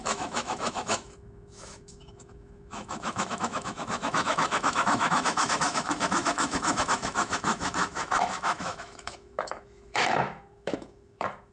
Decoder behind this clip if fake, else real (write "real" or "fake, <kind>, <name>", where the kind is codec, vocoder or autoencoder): fake, autoencoder, DAC-VAE